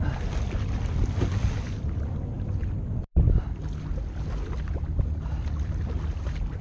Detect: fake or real real